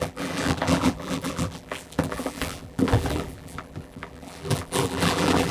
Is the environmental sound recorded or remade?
remade